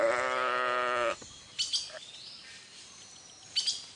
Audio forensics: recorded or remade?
recorded